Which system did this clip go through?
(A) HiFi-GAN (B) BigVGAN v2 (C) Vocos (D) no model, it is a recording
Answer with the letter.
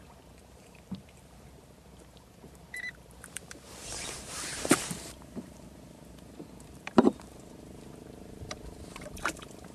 B